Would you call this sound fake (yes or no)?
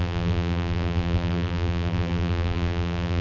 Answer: yes